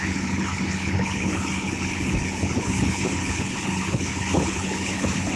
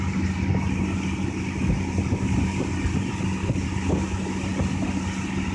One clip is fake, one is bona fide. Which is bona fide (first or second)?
second